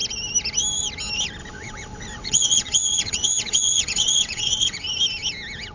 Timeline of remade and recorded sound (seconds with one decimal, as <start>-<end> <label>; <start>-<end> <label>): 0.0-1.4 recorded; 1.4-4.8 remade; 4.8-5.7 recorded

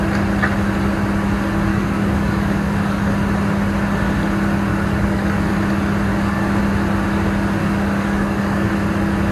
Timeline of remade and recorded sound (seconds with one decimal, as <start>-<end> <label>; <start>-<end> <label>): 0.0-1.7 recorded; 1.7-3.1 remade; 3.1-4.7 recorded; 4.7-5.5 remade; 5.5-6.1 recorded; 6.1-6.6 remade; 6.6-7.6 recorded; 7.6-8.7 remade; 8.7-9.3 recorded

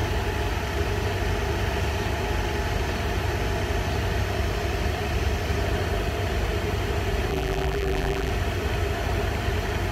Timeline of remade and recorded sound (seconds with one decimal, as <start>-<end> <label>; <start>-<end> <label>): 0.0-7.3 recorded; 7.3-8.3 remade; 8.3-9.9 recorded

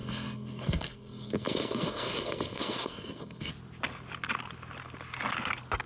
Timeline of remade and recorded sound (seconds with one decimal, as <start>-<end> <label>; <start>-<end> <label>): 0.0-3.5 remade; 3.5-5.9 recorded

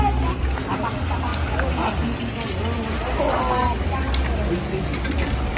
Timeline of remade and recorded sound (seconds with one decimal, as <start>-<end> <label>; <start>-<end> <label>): 0.0-5.6 recorded